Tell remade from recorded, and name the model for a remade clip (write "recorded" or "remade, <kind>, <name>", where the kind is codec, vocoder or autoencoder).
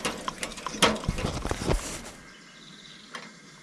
recorded